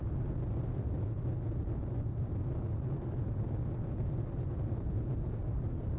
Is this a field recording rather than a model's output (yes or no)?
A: no